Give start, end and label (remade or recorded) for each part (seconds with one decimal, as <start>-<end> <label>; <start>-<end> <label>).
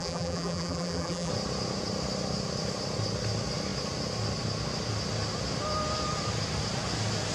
0.0-1.3 remade; 1.3-7.3 recorded